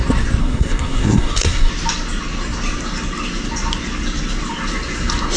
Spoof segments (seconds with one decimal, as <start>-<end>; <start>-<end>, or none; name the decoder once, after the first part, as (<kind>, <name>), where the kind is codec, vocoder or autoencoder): 0.4-1.7 (codec, SNAC)